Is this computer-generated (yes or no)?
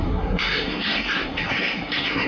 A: yes